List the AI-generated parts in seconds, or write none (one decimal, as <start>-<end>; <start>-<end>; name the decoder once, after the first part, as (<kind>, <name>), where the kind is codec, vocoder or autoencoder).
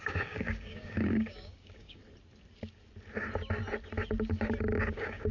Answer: 0.0-2.0 (codec, DAC); 4.8-5.3